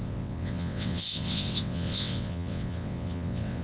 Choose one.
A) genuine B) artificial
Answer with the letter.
B